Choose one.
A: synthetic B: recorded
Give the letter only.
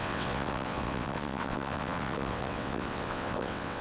A